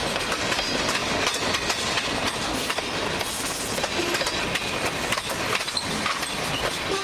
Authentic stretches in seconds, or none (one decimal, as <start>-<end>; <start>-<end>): 0.0-7.0